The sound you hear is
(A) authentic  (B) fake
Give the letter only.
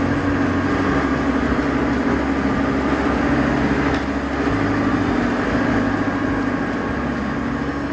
A